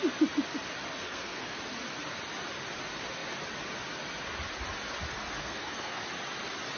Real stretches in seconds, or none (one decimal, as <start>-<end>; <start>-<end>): 0.0-1.0; 1.6-5.4; 6.0-6.8